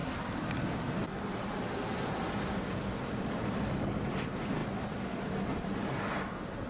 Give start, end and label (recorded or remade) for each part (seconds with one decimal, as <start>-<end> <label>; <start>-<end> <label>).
0.0-6.7 recorded